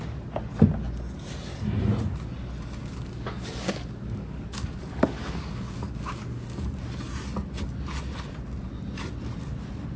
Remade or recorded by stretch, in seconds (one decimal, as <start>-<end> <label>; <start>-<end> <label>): 0.0-2.8 recorded; 2.8-6.8 remade; 6.8-10.0 recorded